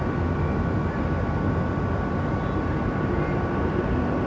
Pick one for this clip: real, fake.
real